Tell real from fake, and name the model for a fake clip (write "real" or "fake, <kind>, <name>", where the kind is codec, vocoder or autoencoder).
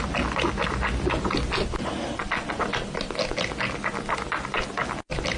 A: real